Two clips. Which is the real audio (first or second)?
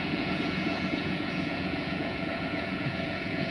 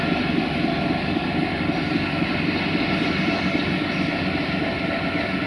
second